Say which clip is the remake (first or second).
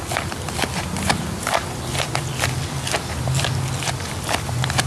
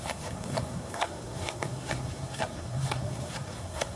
second